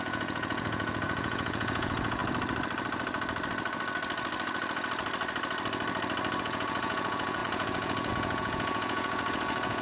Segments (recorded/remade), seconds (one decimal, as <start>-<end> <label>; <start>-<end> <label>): 0.0-2.2 remade; 2.2-6.4 recorded; 6.4-9.8 remade